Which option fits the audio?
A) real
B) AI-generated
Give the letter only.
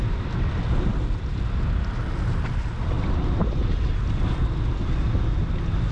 A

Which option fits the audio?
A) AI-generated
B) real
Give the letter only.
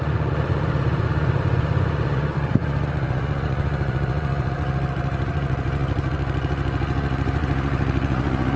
A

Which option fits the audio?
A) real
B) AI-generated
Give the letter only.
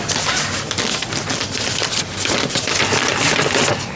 A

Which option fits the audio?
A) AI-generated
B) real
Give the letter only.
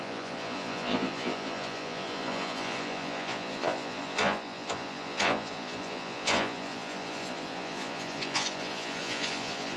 A